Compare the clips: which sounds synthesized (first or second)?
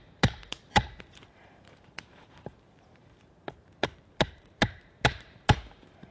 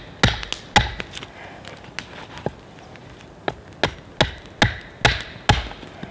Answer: first